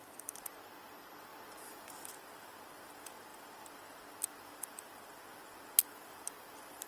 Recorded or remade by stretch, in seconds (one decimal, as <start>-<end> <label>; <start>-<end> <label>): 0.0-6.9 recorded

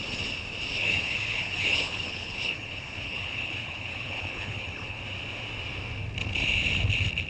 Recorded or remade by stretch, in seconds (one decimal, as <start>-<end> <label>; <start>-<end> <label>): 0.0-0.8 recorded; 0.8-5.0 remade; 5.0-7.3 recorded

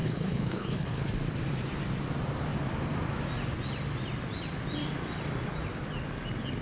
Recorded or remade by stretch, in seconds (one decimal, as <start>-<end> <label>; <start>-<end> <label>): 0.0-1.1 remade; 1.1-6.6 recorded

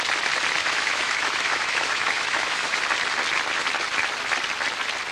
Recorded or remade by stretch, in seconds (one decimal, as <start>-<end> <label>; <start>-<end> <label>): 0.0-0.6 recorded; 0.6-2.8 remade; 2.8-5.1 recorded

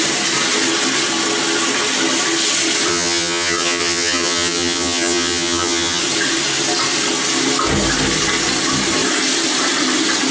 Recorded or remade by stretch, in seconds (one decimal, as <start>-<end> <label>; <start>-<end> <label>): 0.0-2.9 recorded; 2.9-6.0 remade; 6.0-10.3 recorded

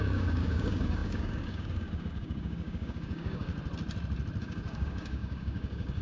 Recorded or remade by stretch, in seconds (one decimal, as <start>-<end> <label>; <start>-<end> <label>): 0.0-3.5 remade; 3.5-4.4 recorded; 4.4-6.0 remade